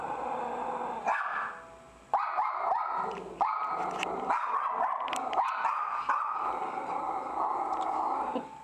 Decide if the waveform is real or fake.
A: real